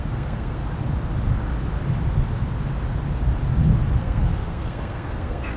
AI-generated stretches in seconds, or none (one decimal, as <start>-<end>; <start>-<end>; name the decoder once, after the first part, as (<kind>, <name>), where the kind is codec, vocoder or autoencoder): 0.0-0.6 (codec, SNAC); 4.0-5.6